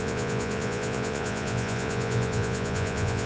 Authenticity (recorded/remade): remade